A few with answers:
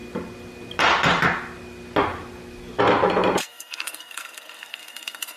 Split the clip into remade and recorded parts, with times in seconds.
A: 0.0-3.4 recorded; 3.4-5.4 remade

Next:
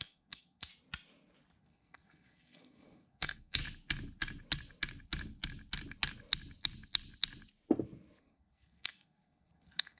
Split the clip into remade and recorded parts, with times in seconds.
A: 0.0-0.7 remade; 0.7-1.6 recorded; 1.6-3.6 remade; 3.6-8.2 recorded; 8.2-10.0 remade

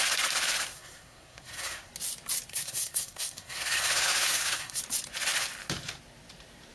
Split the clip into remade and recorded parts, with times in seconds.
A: 0.0-0.7 recorded; 0.7-1.9 remade; 1.9-2.5 recorded; 2.5-4.8 remade; 4.8-6.7 recorded

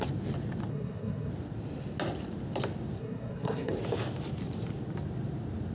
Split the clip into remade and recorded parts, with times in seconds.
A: 0.0-0.7 recorded; 0.7-1.3 remade; 1.3-3.0 recorded; 3.0-3.7 remade; 3.7-5.7 recorded

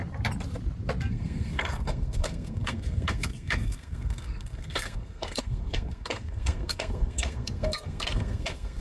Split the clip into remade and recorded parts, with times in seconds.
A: 0.0-1.1 recorded; 1.1-8.8 remade

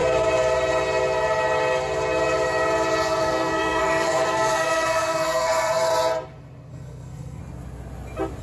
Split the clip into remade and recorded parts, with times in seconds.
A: 0.0-3.2 recorded; 3.2-5.9 remade; 5.9-6.7 recorded; 6.7-7.4 remade; 7.4-8.4 recorded

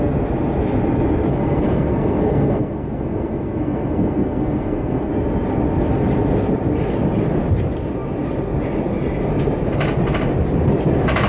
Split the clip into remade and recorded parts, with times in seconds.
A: 0.0-1.3 recorded; 1.3-5.1 remade; 5.1-11.3 recorded

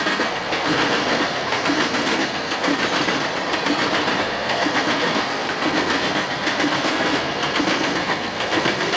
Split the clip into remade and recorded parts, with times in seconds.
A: 0.0-2.7 remade; 2.7-4.2 recorded; 4.2-9.0 remade